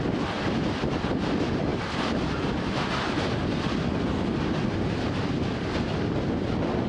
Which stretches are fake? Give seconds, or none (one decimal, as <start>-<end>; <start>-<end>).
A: none